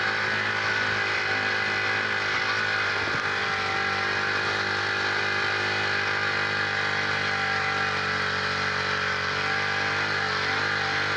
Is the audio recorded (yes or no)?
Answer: yes